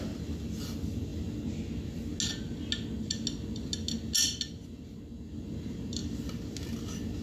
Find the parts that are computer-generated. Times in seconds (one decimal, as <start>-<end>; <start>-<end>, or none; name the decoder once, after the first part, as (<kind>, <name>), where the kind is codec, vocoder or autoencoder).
none